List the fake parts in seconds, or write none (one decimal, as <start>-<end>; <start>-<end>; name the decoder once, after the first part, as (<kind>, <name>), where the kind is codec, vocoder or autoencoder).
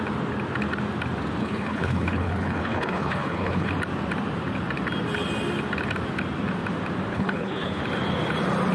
1.4-3.7 (codec, HILCodec); 7.1-7.8